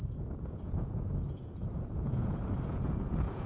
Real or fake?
fake